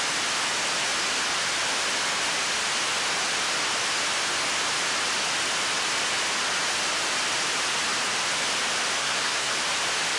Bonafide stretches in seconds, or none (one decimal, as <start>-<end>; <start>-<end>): 0.0-9.0; 9.5-10.2

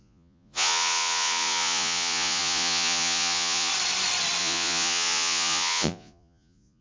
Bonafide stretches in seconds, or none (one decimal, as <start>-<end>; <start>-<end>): 3.7-4.4

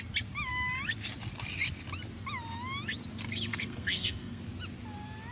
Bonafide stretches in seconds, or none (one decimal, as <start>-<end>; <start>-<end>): 0.0-3.5; 4.4-5.3

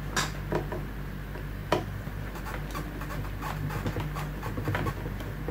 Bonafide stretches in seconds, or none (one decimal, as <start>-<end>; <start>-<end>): 0.0-1.6; 2.4-5.5

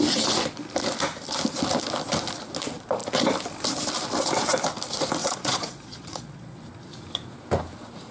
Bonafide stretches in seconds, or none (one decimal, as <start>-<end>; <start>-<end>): 0.0-5.2; 6.6-8.1

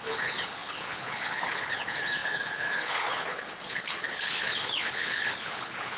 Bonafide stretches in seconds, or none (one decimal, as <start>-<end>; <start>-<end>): none